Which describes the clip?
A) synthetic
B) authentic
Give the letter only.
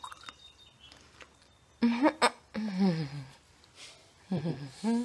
B